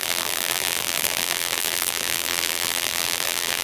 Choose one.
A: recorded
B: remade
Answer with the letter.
B